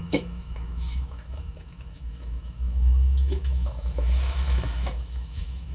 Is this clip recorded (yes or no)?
no